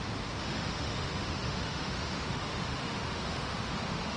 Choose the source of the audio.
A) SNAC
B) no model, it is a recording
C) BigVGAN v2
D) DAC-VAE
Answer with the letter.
D